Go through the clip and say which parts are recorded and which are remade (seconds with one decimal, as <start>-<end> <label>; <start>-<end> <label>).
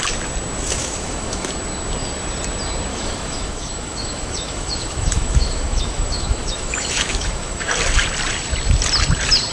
0.0-0.8 recorded; 0.8-1.5 remade; 1.5-2.9 recorded; 2.9-7.7 remade; 7.7-9.5 recorded